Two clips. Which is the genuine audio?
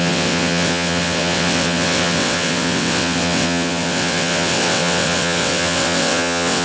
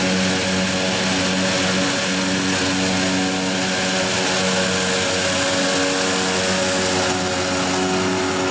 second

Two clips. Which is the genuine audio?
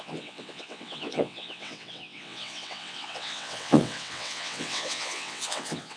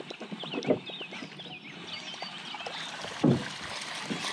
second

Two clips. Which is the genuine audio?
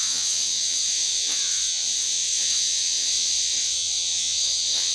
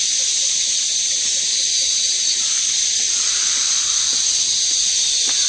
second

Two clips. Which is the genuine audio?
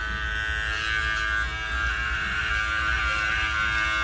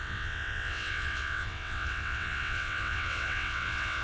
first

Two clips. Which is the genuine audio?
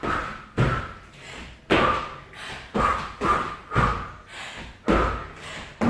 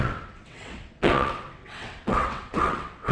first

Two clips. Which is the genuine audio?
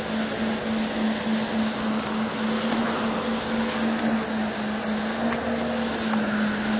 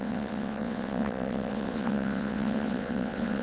first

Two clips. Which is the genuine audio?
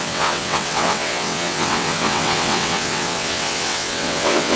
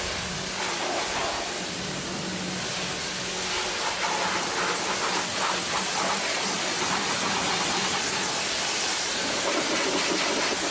second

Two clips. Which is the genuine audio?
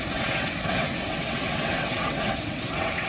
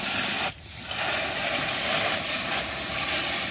second